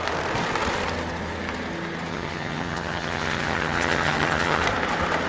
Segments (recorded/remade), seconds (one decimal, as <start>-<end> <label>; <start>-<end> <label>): 0.0-2.1 recorded; 2.1-4.6 remade; 4.6-5.3 recorded